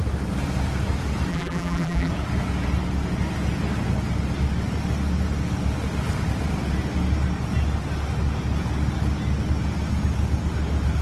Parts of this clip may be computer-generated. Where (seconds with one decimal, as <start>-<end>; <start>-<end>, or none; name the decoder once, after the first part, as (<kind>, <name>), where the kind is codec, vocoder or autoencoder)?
1.3-2.1 (vocoder, BigVGAN v2)